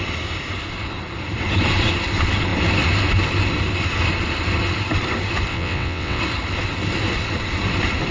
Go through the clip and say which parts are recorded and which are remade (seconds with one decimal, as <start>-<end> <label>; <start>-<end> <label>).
0.0-5.5 recorded; 5.5-6.2 remade; 6.2-8.1 recorded